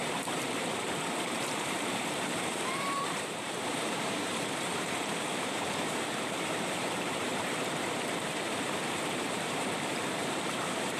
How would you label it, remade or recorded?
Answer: remade